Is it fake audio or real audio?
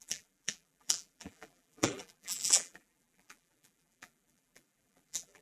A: fake